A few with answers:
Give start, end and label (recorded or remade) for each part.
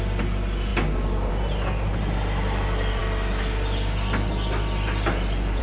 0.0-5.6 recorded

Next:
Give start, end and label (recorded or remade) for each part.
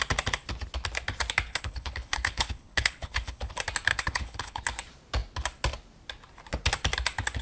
0.0-1.5 recorded; 1.5-3.5 remade; 3.5-3.9 recorded; 3.9-4.6 remade; 4.6-7.4 recorded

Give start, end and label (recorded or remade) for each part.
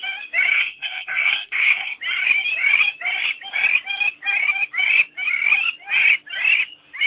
0.0-0.5 recorded; 0.5-2.0 remade; 2.0-7.1 recorded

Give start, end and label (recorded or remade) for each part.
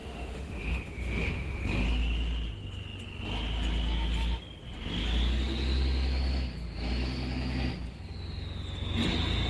0.0-1.6 remade; 1.6-9.5 recorded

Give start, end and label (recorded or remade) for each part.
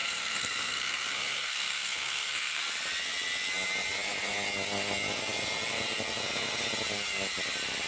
0.0-2.6 remade; 2.6-7.9 recorded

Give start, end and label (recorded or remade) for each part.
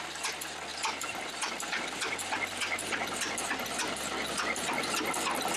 0.0-5.6 recorded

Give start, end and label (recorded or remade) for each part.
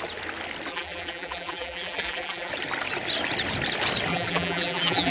0.0-0.7 recorded; 0.7-2.5 remade; 2.5-4.1 recorded; 4.1-5.1 remade